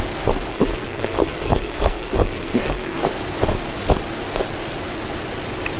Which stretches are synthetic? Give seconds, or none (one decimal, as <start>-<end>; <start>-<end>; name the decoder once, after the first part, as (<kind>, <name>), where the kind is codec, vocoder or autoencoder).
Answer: 0.5-3.0 (codec, SNAC)